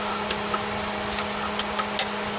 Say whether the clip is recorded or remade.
recorded